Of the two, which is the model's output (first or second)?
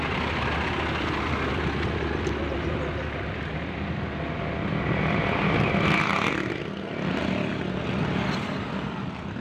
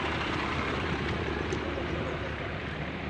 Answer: second